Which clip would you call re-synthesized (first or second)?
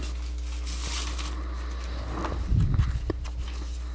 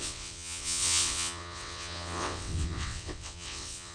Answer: second